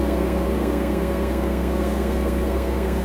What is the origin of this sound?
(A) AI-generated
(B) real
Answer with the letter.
A